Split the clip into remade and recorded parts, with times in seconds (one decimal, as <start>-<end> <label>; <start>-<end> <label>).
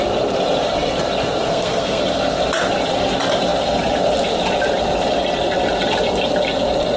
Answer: 0.0-1.5 recorded; 1.5-2.0 remade; 2.0-7.0 recorded